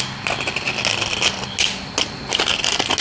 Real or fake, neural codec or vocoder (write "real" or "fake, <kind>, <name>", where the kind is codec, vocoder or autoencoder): real